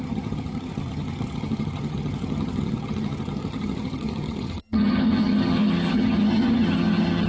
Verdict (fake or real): fake